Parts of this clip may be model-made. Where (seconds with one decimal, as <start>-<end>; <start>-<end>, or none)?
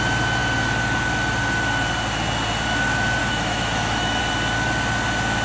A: 3.2-4.2